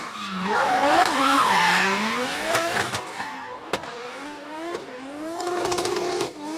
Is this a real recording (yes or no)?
no